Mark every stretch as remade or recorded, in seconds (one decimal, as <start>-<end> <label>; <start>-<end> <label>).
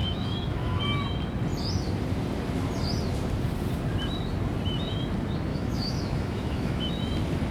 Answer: 0.0-0.8 remade; 0.8-5.5 recorded; 5.5-6.9 remade; 6.9-7.5 recorded